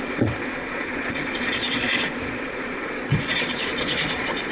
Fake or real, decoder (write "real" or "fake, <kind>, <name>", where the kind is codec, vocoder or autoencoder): fake, vocoder, Vocos